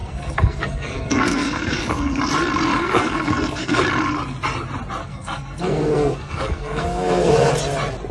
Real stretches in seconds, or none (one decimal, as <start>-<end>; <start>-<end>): 2.2-2.8; 3.8-5.0; 7.5-8.1